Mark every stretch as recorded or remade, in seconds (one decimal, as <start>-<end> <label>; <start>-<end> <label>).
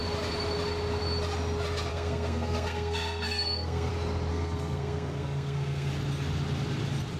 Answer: 0.0-1.9 recorded; 1.9-3.9 remade; 3.9-4.3 recorded; 4.3-5.9 remade; 5.9-7.2 recorded